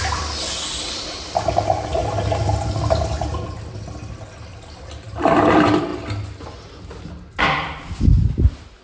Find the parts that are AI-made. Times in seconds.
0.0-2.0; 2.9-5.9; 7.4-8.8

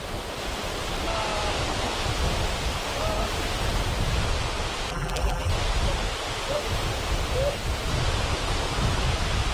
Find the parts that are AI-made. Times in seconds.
4.9-5.5

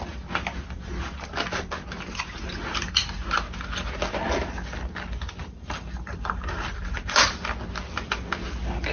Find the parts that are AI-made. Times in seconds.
5.4-6.5